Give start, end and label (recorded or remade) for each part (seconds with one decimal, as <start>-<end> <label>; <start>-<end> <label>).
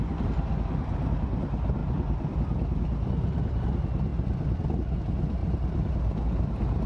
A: 0.0-1.8 recorded; 1.8-3.6 remade; 3.6-4.1 recorded; 4.1-4.6 remade; 4.6-5.4 recorded; 5.4-6.9 remade